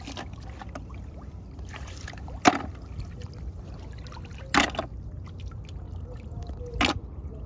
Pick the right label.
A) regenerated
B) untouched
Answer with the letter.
B